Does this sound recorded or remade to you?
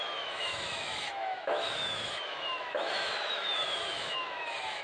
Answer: remade